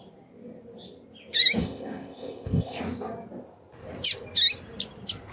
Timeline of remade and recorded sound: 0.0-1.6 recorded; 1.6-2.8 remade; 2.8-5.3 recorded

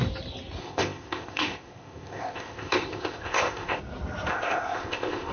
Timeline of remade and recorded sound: 0.0-0.6 recorded; 0.6-3.8 remade; 3.8-4.3 recorded; 4.3-5.3 remade

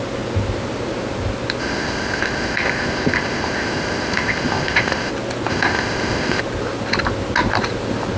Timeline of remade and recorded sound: 0.0-1.6 recorded; 1.6-5.1 remade; 5.1-5.5 recorded; 5.5-6.4 remade; 6.4-8.2 recorded